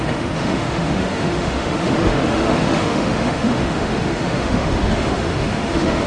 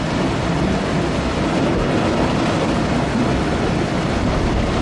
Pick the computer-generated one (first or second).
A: first